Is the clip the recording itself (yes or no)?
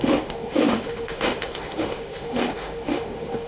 no